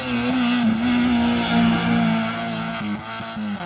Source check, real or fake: real